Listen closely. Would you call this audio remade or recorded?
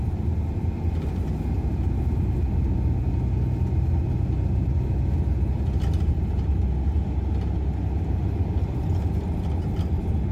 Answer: recorded